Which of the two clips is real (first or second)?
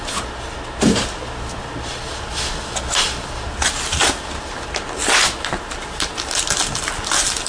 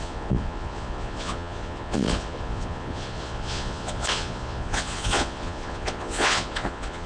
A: first